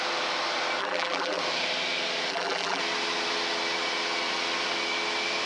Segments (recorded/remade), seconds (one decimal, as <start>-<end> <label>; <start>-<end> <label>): 0.0-0.8 recorded; 0.8-1.4 remade; 1.4-2.3 recorded; 2.3-2.8 remade; 2.8-5.5 recorded